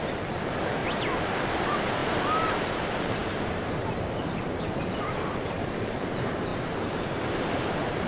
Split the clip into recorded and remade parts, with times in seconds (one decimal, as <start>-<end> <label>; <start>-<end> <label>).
0.0-0.8 remade; 0.8-1.3 recorded; 1.3-2.0 remade; 2.0-2.5 recorded; 2.5-8.1 remade

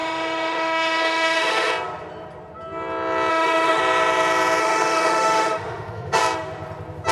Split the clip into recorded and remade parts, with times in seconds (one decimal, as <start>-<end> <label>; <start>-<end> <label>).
0.0-1.7 remade; 1.7-3.3 recorded; 3.3-3.8 remade; 3.8-4.6 recorded; 4.6-6.2 remade; 6.2-7.1 recorded

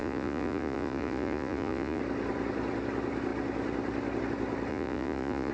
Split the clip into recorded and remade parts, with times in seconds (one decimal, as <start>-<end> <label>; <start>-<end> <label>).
0.0-2.0 remade; 2.0-4.7 recorded; 4.7-5.5 remade

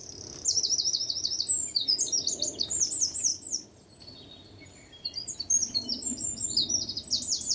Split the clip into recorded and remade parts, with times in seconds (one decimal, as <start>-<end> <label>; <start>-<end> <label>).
0.0-3.3 recorded; 3.3-4.0 remade; 4.0-5.6 recorded; 5.6-6.1 remade; 6.1-7.5 recorded

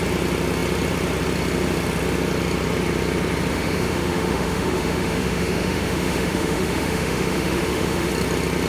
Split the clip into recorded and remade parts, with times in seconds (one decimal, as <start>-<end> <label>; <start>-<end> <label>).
0.0-3.5 recorded; 3.5-8.1 remade; 8.1-8.7 recorded

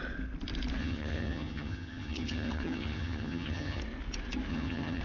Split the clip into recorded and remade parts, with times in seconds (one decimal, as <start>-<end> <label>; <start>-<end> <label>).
0.0-0.8 recorded; 0.8-3.8 remade; 3.8-4.5 recorded; 4.5-5.0 remade